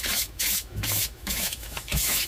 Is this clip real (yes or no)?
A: no